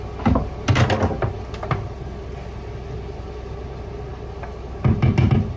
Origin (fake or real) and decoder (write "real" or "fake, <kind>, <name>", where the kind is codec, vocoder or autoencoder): real